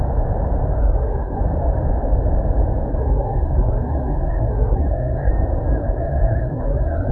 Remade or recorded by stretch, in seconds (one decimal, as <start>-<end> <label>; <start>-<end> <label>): 0.0-0.8 recorded; 0.8-1.4 remade; 1.4-2.9 recorded; 2.9-5.3 remade; 5.3-5.8 recorded; 5.8-7.1 remade